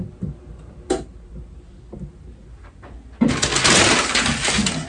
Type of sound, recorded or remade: recorded